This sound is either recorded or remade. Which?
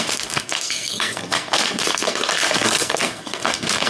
remade